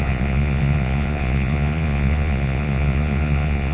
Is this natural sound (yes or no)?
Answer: no